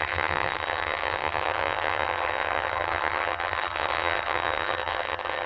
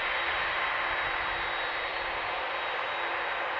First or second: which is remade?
first